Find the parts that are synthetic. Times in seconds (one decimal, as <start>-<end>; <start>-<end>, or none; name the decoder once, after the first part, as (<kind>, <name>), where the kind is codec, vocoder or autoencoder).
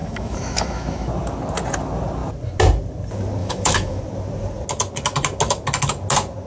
0.0-1.1 (autoencoder, DAC-VAE); 3.4-4.0